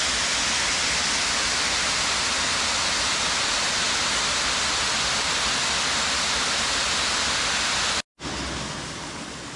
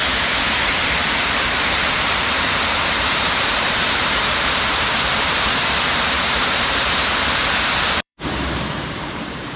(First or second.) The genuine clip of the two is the first